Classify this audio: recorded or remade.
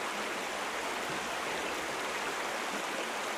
recorded